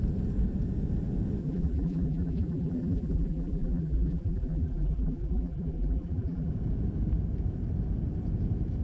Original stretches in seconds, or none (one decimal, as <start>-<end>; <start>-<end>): 0.0-1.4; 6.5-8.8